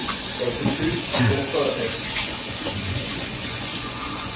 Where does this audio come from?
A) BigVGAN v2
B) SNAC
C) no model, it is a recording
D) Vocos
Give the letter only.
D